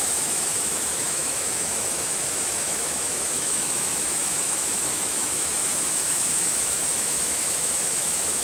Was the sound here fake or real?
fake